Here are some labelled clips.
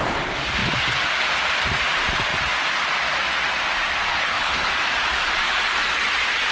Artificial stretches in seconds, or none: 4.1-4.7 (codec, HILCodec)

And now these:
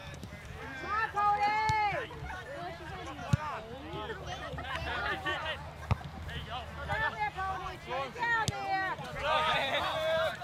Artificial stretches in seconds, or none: 0.0-3.2 (vocoder, BigVGAN v2); 4.4-5.3; 9.8-10.4

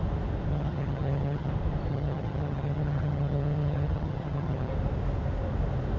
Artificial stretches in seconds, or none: 0.5-1.5 (vocoder, HiFi-GAN); 1.9-4.7

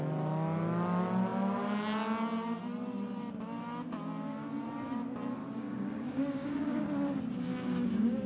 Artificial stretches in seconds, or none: 5.4-6.8 (codec, DAC); 7.5-8.3

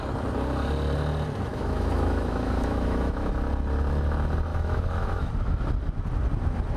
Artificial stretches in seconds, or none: 1.5-3.3 (autoencoder, DAC-VAE); 4.5-5.3